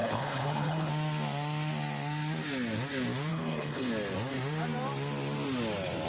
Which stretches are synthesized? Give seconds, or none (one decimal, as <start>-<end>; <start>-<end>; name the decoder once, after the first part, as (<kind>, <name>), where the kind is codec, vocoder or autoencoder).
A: 0.0-0.9 (codec, HILCodec); 3.3-3.9